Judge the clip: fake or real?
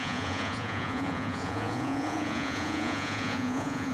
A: fake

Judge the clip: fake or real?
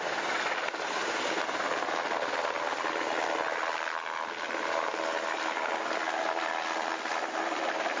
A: real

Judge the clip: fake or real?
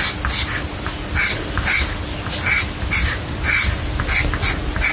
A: real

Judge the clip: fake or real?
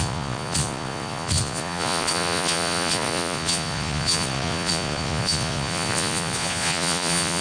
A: fake